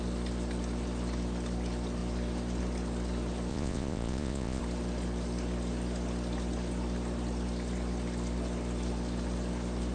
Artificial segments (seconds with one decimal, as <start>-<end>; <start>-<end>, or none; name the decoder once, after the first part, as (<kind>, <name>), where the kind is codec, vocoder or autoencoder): 3.5-4.6 (vocoder, Vocos)